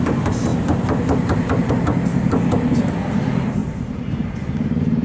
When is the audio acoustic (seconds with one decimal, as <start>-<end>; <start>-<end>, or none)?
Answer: 0.0-3.6; 4.1-5.0